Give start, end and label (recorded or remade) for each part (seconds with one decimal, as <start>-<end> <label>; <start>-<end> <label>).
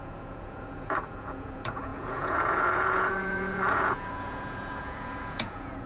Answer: 0.0-5.9 remade